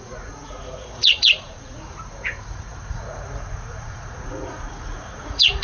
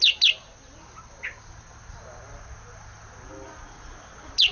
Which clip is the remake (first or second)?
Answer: first